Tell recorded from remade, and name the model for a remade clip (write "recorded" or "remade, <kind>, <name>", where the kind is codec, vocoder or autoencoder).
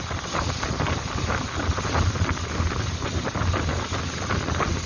recorded